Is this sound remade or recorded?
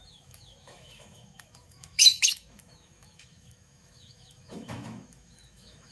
remade